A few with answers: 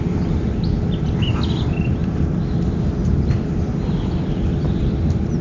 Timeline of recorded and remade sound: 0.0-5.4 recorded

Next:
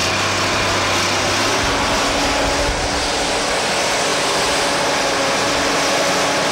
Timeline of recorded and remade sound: 0.0-6.5 recorded

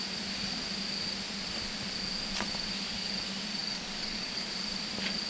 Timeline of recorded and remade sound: 0.0-3.6 recorded; 3.6-4.5 remade; 4.5-5.3 recorded

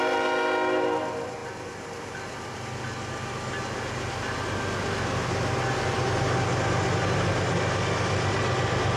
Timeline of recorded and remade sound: 0.0-9.0 recorded

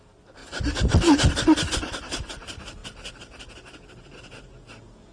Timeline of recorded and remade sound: 0.0-5.1 recorded

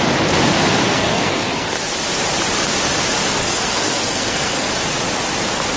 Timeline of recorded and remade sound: 0.0-0.8 recorded; 0.8-1.7 remade; 1.7-3.4 recorded; 3.4-4.7 remade; 4.7-5.8 recorded